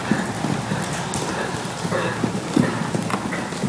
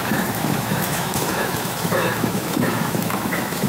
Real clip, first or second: first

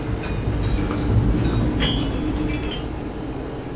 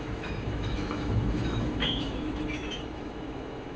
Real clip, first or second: first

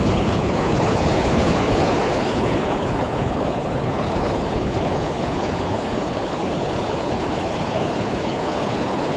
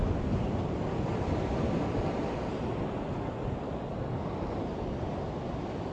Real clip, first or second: second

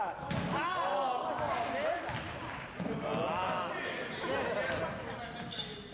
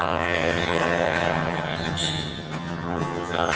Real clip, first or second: first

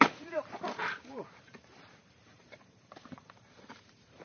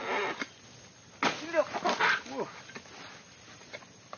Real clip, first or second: second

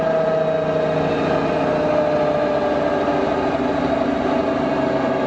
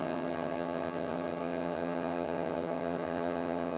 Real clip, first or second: first